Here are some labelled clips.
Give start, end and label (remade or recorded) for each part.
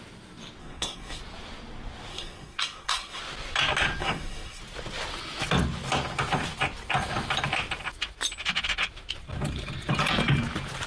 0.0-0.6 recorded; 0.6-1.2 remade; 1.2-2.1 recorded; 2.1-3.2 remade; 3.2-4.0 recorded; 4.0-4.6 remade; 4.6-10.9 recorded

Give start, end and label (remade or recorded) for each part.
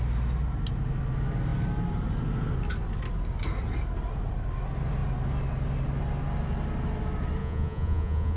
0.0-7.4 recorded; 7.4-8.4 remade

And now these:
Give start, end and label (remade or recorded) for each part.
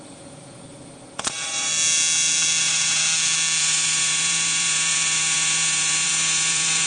0.0-1.7 remade; 1.7-2.6 recorded; 2.6-3.0 remade; 3.0-3.6 recorded; 3.6-6.9 remade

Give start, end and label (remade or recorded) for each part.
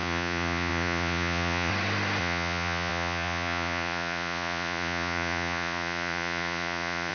0.0-1.7 remade; 1.7-2.2 recorded; 2.2-7.1 remade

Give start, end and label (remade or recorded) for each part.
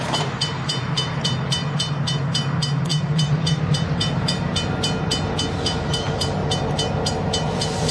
0.0-4.5 remade; 4.5-5.5 recorded; 5.5-6.4 remade; 6.4-7.9 recorded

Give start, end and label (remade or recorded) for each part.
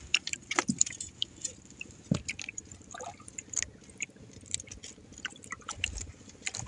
0.0-6.7 recorded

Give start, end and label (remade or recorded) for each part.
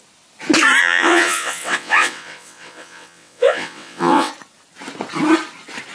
0.0-0.8 recorded; 0.8-4.3 remade; 4.3-5.9 recorded